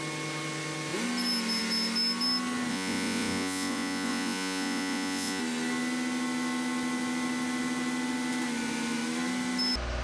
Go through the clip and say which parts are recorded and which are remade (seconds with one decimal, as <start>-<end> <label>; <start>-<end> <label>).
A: 0.0-2.7 recorded; 2.7-5.4 remade; 5.4-10.0 recorded